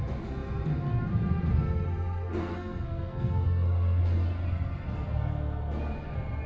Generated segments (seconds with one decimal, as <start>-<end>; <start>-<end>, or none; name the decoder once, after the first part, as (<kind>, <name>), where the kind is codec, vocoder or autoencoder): 2.4-4.0 (codec, SNAC)